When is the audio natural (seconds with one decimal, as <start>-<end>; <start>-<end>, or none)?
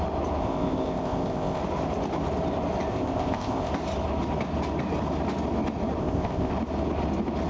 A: 0.0-0.4; 1.6-2.9; 3.7-6.0; 6.5-7.5